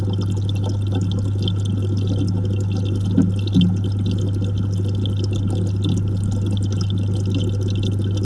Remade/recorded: recorded